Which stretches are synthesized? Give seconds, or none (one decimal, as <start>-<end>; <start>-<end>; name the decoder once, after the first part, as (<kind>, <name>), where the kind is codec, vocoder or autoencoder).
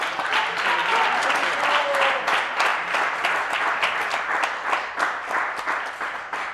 0.8-1.8 (vocoder, BigVGAN v2); 2.7-3.5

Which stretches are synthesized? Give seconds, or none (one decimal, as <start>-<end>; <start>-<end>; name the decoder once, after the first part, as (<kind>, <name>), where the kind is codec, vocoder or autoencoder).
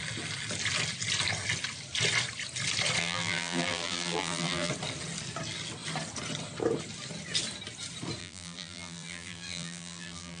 3.0-4.7 (vocoder, BigVGAN v2); 8.2-10.4